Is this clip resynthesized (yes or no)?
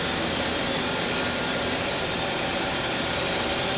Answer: yes